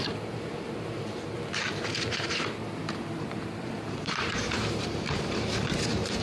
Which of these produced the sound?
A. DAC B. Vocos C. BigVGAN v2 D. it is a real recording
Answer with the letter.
C